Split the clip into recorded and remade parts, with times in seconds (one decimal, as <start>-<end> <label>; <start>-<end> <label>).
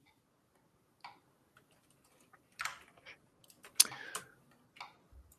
0.0-5.4 recorded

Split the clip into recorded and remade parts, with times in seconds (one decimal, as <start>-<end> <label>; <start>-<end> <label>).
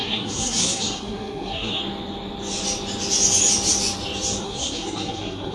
0.0-1.8 remade; 1.8-4.4 recorded; 4.4-5.5 remade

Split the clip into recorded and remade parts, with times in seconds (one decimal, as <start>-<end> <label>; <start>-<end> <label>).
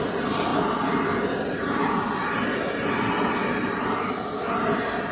0.0-5.1 recorded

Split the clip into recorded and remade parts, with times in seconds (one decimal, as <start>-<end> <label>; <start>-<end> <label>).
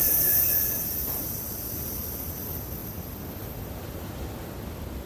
0.0-5.1 recorded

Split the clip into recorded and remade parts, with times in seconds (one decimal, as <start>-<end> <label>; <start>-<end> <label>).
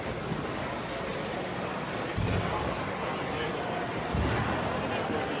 0.0-5.4 recorded